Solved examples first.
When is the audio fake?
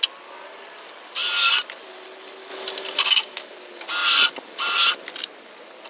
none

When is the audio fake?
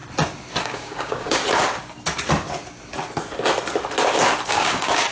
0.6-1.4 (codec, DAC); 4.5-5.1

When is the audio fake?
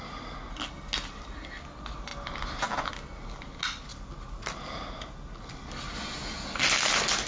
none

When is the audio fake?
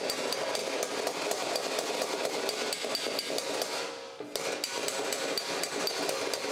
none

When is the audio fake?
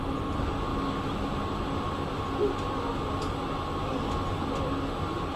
none